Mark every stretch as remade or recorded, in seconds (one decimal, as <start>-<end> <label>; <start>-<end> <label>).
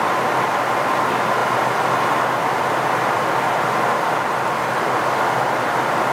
0.0-6.1 recorded